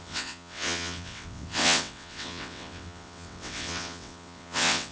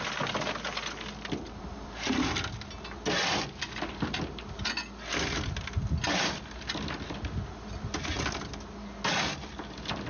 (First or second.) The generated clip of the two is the first